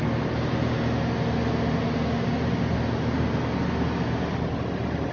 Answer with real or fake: real